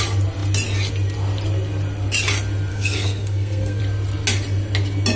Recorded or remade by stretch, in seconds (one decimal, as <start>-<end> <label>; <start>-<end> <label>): 0.0-2.7 recorded; 2.7-3.8 remade; 3.8-5.2 recorded